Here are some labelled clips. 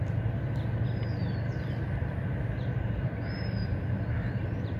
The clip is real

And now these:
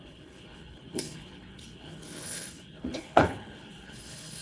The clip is fake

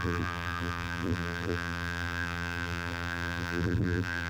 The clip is fake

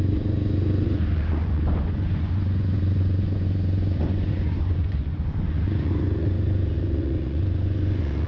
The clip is fake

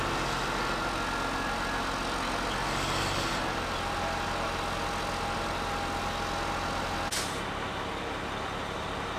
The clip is real